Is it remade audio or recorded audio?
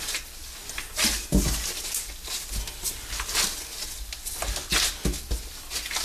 recorded